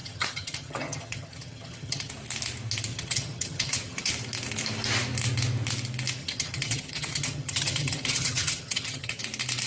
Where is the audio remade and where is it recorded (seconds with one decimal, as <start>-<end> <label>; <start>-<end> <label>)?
0.0-2.1 remade; 2.1-2.9 recorded; 2.9-4.1 remade; 4.1-6.2 recorded; 6.2-9.2 remade; 9.2-9.7 recorded